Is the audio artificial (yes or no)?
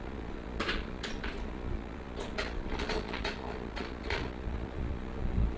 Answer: yes